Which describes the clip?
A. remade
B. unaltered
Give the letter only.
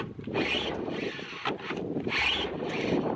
B